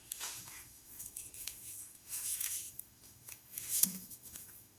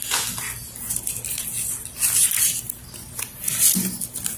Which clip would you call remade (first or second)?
first